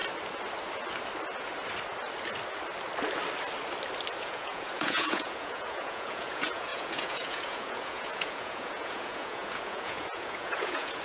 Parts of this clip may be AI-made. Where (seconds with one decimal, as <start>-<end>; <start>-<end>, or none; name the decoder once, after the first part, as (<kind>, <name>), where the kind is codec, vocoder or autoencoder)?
4.2-11.0 (vocoder, Vocos)